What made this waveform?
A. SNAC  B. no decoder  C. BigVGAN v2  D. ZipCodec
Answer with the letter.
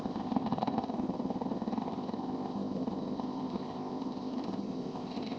D